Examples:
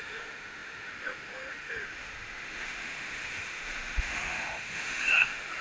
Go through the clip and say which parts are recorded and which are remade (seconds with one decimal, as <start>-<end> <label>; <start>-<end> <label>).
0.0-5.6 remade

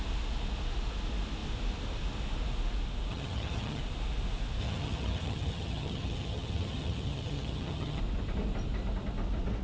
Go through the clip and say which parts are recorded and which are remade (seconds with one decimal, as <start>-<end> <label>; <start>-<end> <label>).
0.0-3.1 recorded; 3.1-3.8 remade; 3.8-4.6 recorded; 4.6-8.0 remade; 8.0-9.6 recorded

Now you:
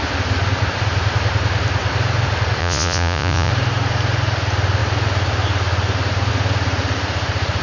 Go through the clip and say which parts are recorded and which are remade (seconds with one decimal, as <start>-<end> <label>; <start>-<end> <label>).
0.0-2.6 recorded; 2.6-3.5 remade; 3.5-7.6 recorded

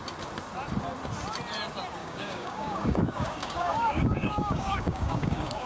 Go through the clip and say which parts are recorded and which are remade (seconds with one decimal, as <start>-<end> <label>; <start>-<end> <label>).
0.0-2.0 recorded; 2.0-5.7 remade

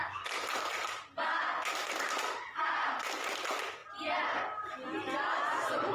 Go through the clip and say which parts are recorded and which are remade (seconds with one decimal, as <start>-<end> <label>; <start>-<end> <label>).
0.0-5.9 recorded

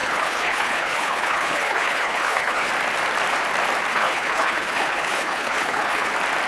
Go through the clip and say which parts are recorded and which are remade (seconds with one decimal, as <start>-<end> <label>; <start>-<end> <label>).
0.0-2.7 remade; 2.7-3.9 recorded; 3.9-6.1 remade; 6.1-6.5 recorded